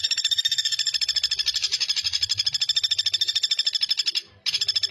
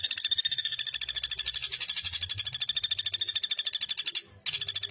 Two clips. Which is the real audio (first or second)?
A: second